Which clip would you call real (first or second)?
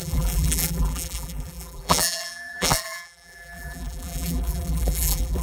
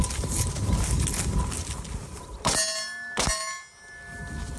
second